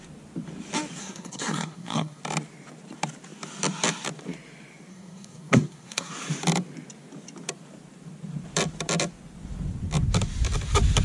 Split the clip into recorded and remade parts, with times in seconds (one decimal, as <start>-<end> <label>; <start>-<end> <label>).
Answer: 0.0-1.0 recorded; 1.0-2.2 remade; 2.2-4.9 recorded; 4.9-6.1 remade; 6.1-11.0 recorded